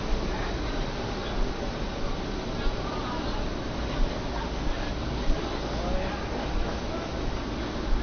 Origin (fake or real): real